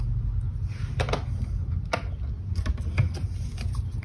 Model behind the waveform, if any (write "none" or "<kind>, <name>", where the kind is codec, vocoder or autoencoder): none